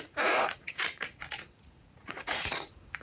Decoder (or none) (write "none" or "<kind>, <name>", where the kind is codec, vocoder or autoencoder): vocoder, Vocos